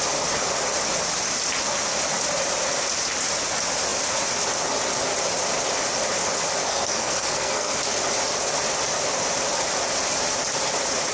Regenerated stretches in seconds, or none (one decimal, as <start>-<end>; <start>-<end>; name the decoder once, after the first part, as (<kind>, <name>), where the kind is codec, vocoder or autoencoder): 6.6-7.8 (codec, SNAC)